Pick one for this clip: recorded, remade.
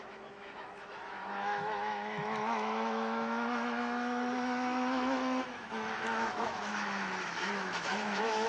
remade